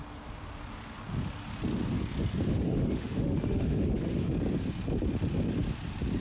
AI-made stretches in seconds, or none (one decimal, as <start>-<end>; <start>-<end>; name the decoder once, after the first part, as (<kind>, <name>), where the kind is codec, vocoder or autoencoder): 2.5-4.3 (autoencoder, DAC-VAE)